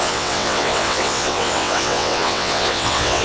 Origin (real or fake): fake